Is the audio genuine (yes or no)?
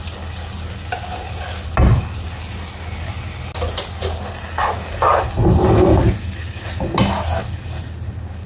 yes